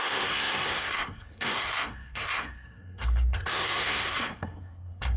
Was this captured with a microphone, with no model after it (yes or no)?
no